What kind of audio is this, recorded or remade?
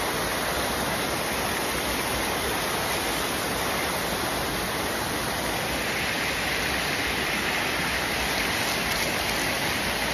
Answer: recorded